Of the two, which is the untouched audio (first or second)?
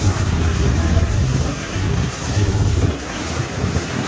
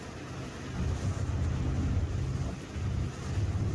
second